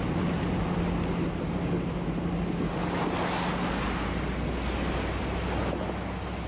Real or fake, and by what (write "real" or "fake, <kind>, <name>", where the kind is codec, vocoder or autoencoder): real